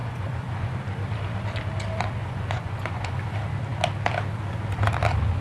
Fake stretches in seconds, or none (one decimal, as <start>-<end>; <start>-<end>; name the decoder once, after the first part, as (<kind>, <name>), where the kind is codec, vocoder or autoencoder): 0.0-0.7 (vocoder, Vocos); 2.2-3.2